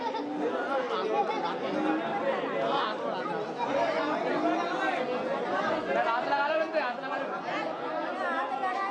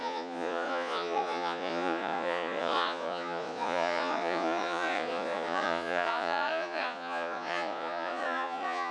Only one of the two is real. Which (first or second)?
first